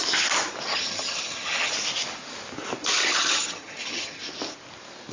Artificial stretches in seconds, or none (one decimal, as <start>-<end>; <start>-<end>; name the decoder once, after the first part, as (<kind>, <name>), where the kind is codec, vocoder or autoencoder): 0.7-1.7 (vocoder, HiFi-GAN); 3.0-4.2